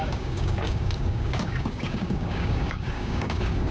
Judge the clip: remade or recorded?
remade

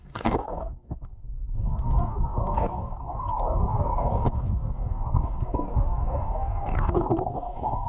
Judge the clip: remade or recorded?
remade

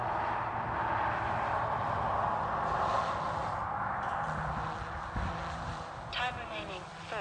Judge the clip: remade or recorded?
recorded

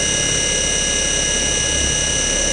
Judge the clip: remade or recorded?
recorded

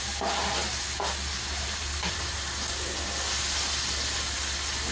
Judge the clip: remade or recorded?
recorded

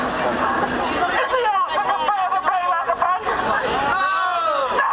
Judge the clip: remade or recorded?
recorded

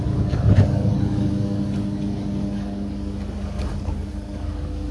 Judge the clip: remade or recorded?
remade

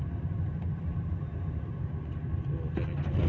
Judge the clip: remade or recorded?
recorded